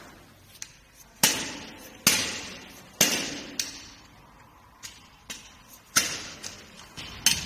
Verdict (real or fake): real